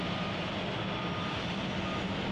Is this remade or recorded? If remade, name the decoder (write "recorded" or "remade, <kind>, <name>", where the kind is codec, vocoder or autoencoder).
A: recorded